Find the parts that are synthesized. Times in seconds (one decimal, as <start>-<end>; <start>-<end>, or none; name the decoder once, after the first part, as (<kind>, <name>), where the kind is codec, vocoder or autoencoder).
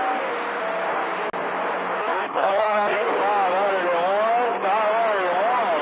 2.0-3.1 (codec, SNAC)